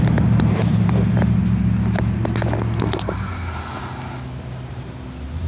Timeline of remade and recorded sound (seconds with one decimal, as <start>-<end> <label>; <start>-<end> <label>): 0.0-1.4 remade; 1.4-4.7 recorded; 4.7-5.5 remade